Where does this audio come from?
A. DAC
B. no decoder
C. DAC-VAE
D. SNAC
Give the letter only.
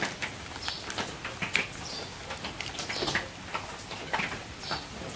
B